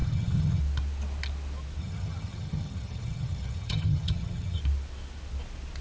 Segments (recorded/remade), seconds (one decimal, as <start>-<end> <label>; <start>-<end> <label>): 0.0-0.6 remade; 0.6-1.8 recorded; 1.8-4.6 remade; 4.6-5.8 recorded